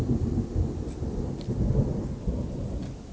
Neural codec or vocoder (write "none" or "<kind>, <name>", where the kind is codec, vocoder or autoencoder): none